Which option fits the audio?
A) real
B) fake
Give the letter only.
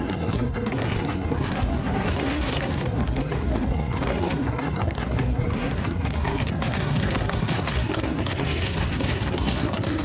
B